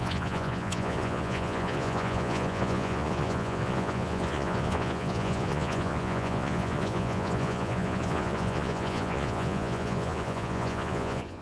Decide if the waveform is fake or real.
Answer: fake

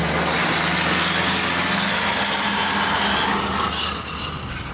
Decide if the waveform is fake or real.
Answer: real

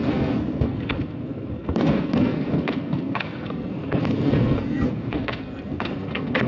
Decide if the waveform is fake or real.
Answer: fake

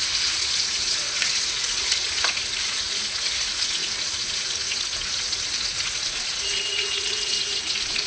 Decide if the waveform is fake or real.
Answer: fake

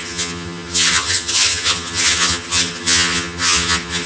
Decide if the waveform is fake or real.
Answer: fake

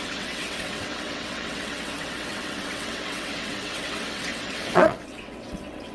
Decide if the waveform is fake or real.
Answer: fake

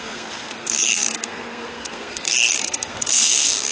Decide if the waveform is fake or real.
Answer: fake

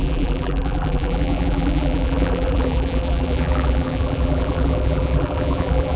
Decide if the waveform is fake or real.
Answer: fake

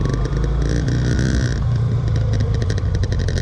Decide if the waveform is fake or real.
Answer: fake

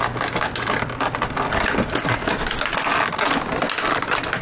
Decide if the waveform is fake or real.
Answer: real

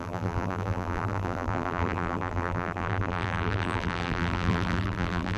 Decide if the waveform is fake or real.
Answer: fake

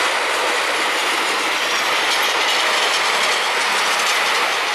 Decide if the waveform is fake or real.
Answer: real